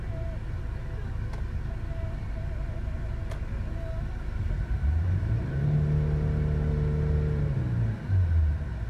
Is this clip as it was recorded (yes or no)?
yes